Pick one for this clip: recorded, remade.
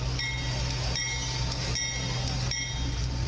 recorded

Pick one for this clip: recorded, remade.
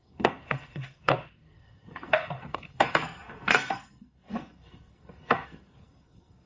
remade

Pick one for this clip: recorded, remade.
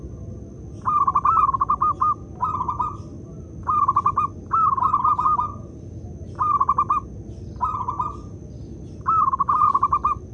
recorded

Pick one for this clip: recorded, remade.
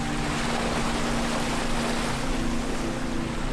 recorded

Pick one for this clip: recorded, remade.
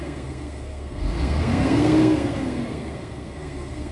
remade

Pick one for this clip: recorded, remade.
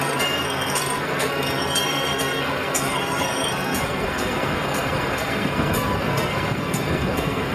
remade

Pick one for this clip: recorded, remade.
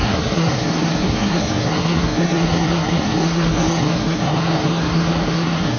remade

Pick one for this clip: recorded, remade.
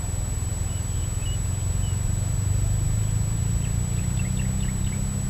recorded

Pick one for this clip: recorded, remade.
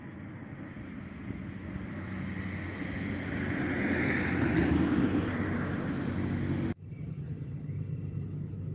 recorded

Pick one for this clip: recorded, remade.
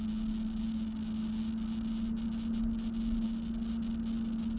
recorded